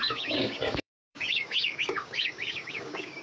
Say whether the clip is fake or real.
fake